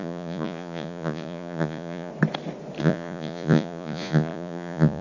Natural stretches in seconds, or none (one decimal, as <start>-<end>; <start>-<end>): 2.1-2.8